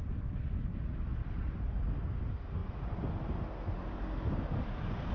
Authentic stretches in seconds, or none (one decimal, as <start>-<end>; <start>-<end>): 0.0-5.1